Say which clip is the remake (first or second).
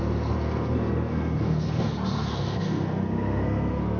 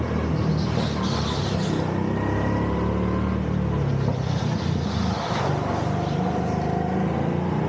first